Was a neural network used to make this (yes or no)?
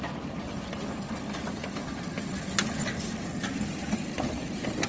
no